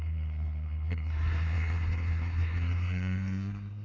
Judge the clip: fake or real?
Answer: fake